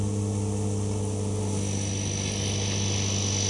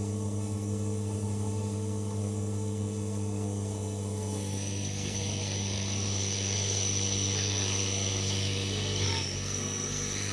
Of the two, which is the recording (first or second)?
first